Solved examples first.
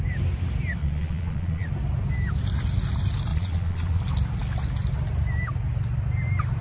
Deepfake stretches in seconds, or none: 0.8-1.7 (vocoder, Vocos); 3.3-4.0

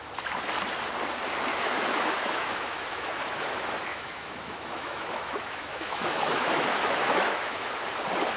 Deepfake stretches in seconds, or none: 1.5-3.4 (autoencoder, DAC-VAE); 3.9-7.7

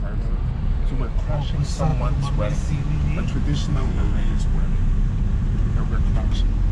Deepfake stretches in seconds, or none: 3.7-4.4 (codec, SNAC)